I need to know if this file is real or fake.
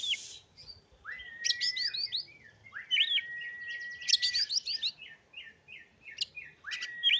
real